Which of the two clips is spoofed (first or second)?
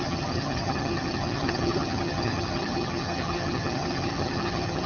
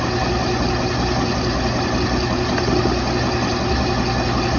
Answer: first